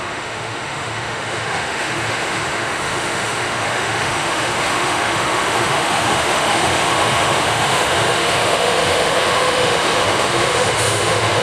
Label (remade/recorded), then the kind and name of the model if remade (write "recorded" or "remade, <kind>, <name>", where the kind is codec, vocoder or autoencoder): remade, autoencoder, DAC-VAE